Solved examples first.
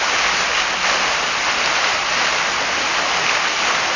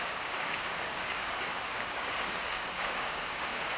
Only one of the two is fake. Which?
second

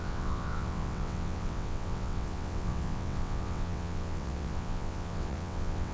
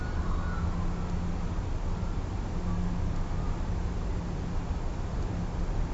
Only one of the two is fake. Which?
first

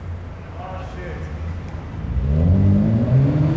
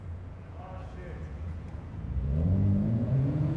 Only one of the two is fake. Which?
second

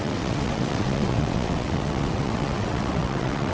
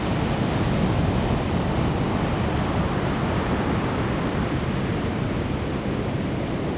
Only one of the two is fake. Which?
first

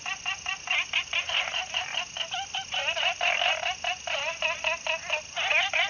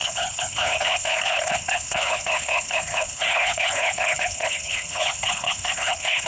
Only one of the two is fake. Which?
second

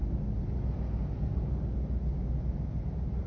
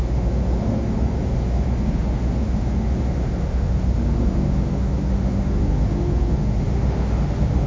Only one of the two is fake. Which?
second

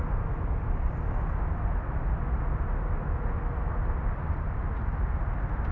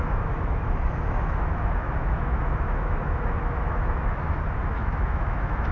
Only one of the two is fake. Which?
second